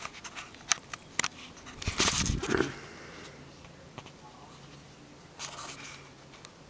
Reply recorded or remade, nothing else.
recorded